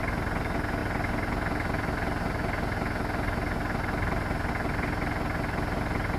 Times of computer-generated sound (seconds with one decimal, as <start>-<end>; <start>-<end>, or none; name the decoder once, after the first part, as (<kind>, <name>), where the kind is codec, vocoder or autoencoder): none